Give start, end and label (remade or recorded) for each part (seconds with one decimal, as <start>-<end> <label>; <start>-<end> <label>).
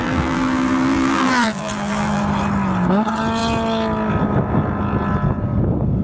0.0-2.2 remade; 2.2-6.0 recorded